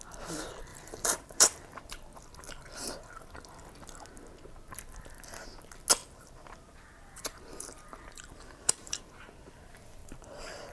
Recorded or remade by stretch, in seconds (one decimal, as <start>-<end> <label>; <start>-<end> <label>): 0.0-0.7 recorded; 0.7-1.8 remade; 1.8-6.0 recorded; 6.0-9.0 remade; 9.0-10.0 recorded; 10.0-10.7 remade